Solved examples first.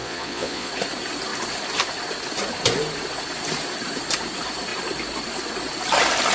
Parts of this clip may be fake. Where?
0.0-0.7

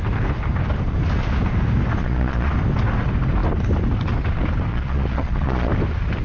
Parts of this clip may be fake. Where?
2.0-2.5; 4.7-5.7

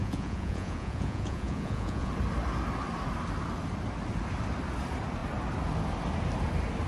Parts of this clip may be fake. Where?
0.0-2.1

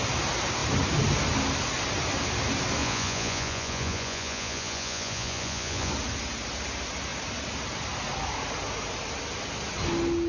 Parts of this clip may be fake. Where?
2.8-5.9

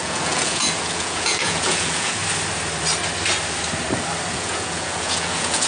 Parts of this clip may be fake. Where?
0.0-2.2; 4.3-5.7

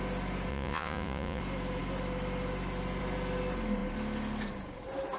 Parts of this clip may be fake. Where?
0.5-1.4

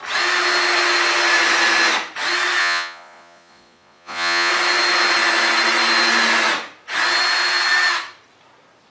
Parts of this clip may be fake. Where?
2.6-4.5